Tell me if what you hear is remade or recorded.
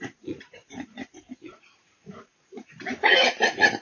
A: remade